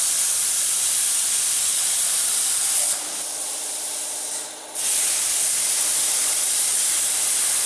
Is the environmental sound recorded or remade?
remade